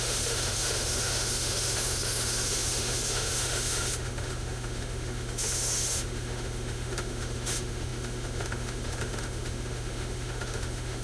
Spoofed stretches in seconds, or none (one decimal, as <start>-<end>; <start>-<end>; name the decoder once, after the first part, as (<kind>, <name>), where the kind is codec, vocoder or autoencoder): 0.0-11.0 (autoencoder, DAC-VAE)